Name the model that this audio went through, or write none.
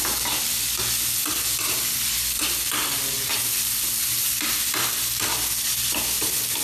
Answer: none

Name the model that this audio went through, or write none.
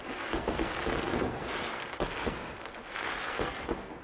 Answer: codec, SNAC